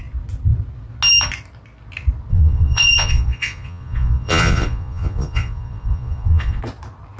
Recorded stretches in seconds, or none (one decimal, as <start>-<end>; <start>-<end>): 0.0-2.3; 6.6-7.2